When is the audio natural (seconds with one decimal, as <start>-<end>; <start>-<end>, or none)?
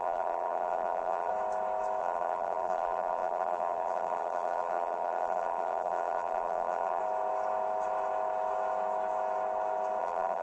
1.3-2.0; 7.0-10.0